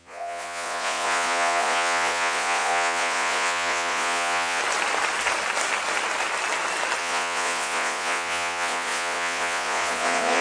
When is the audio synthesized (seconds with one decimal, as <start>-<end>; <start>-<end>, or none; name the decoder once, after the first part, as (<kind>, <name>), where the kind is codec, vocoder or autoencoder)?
0.0-4.6 (vocoder, Vocos); 7.0-10.4